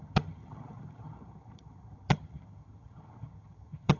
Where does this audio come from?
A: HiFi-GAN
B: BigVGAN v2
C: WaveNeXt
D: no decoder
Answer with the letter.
A